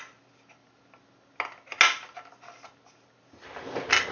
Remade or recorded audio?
recorded